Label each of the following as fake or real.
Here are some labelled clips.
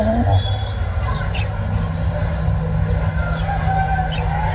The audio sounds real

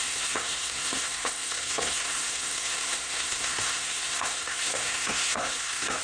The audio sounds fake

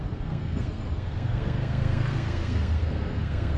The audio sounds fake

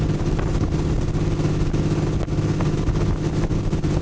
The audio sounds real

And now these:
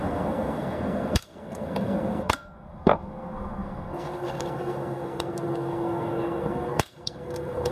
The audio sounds fake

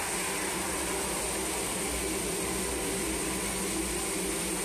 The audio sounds real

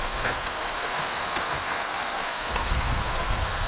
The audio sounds fake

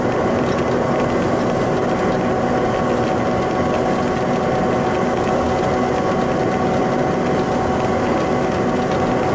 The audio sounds real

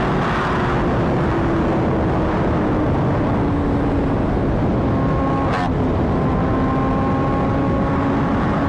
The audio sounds real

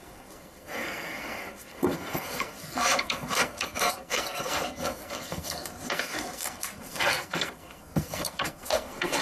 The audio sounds fake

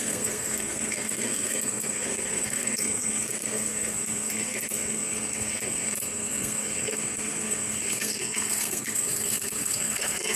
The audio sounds fake